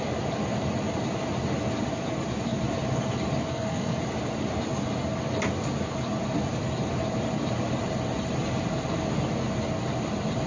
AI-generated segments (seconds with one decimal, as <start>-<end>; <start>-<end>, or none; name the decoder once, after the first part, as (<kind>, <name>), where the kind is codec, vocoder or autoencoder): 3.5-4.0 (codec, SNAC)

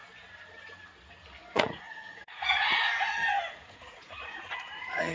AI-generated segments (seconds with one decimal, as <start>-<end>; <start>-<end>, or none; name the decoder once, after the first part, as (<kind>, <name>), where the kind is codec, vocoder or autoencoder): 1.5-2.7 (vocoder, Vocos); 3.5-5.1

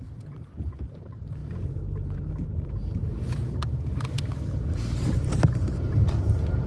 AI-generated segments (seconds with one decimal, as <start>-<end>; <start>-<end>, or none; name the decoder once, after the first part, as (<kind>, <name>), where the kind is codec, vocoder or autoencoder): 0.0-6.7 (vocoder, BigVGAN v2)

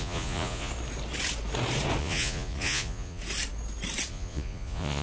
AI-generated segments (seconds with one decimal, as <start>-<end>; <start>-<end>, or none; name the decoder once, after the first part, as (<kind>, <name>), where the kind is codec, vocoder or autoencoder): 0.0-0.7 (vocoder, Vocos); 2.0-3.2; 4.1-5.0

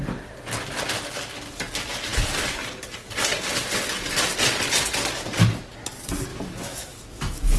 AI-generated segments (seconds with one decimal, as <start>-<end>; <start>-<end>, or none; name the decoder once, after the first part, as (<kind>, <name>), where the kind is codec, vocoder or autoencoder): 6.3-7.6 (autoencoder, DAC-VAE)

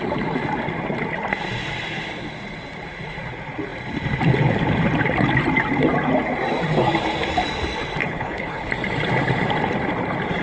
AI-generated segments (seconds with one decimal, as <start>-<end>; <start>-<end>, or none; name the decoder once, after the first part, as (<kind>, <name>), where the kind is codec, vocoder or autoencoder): 8.0-8.7 (codec, HILCodec)

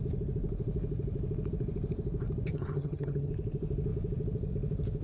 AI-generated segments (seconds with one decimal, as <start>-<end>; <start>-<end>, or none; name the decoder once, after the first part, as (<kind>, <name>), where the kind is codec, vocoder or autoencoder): 2.5-3.3 (vocoder, HiFi-GAN)

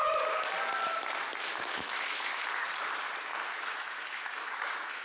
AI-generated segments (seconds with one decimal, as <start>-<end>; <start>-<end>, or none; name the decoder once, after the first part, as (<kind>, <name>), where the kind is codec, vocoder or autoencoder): 1.6-2.4 (autoencoder, DAC-VAE); 3.6-5.0